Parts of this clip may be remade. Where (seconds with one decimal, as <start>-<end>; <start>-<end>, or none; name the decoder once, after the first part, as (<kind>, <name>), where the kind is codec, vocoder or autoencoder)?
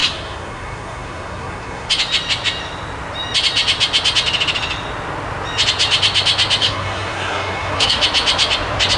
0.0-1.9 (codec, SNAC); 6.6-8.0